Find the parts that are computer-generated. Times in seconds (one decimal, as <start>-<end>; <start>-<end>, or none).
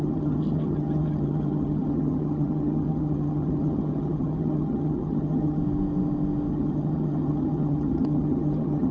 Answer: 0.0-5.6; 6.5-8.9